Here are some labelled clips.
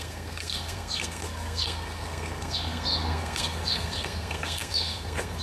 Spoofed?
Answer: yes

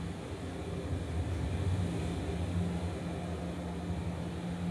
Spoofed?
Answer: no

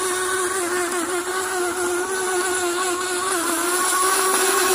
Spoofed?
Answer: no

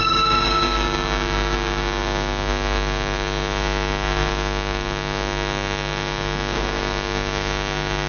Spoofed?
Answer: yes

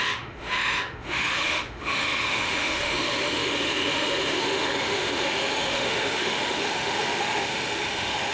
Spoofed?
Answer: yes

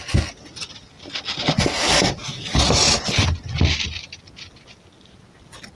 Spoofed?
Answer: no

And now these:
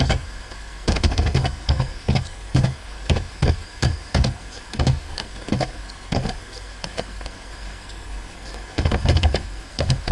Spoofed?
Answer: yes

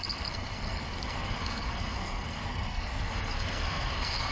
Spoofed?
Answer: yes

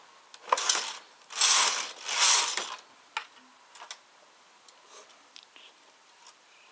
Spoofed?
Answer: no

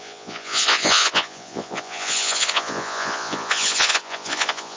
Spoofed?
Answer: yes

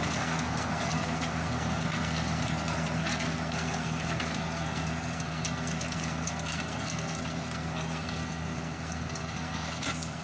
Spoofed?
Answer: yes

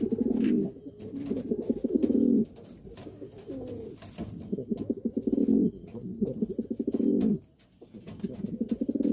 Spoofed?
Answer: no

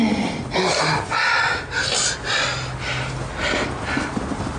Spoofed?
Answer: no